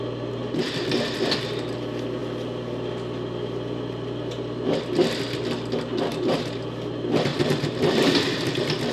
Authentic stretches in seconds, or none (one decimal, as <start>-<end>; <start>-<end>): 0.0-7.3; 8.1-8.9